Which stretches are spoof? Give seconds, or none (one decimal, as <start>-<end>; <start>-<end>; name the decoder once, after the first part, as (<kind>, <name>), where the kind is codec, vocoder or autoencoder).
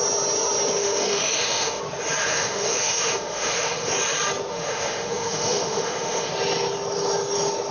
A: 0.8-1.8 (autoencoder, DAC-VAE); 2.2-3.9; 4.5-6.3